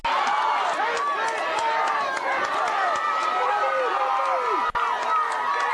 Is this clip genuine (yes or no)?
yes